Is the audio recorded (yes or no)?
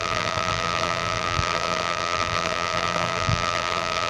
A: no